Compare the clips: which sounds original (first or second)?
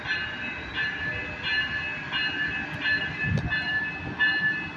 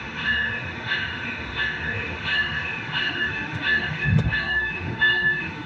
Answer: first